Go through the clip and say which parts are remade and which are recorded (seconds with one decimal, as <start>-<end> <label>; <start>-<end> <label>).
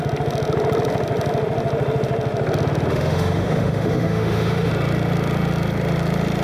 0.0-2.9 recorded; 2.9-4.7 remade; 4.7-6.4 recorded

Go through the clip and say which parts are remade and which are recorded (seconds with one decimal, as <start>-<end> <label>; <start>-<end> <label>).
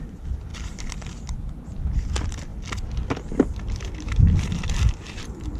0.0-5.6 recorded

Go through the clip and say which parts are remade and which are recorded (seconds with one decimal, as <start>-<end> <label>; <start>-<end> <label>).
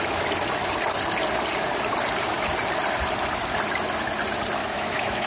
0.0-4.6 recorded; 4.6-5.3 remade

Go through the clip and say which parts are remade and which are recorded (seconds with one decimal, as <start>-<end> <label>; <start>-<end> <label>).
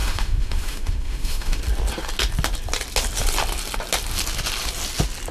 0.0-1.6 remade; 1.6-5.3 recorded